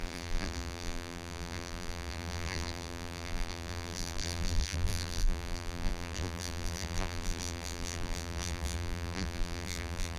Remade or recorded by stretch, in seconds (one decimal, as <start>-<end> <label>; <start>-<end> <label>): 0.0-10.2 remade